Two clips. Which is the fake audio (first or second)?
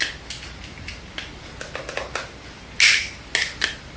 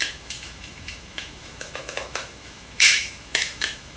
second